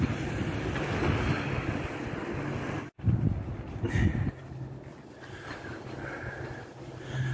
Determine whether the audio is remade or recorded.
recorded